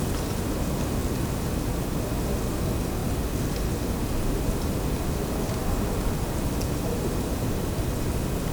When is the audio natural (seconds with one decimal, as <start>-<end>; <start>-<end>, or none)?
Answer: 0.0-8.5